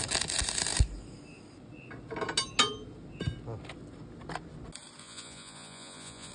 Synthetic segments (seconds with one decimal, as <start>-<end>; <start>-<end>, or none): 5.0-6.3

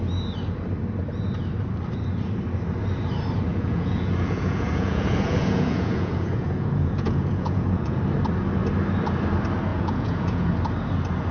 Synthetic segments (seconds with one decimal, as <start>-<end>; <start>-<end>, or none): 3.5-8.0; 9.7-10.5

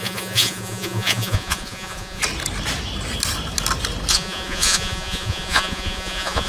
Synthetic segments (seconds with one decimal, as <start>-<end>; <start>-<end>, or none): 0.0-2.2; 4.1-6.5

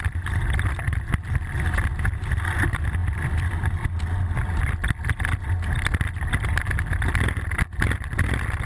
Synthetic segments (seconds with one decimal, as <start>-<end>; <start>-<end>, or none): none

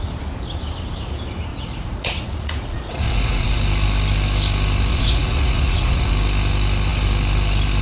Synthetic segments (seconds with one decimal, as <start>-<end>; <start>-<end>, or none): 1.5-3.6; 4.9-6.1

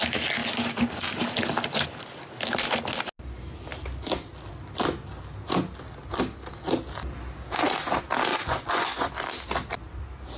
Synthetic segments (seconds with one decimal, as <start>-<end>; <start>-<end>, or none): 8.3-9.1